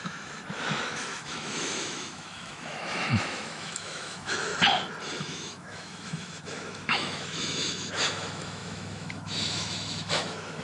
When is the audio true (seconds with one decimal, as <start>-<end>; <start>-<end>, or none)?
4.5-5.2